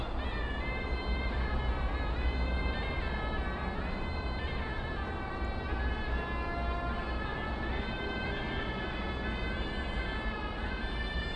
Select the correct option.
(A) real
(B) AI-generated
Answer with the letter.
A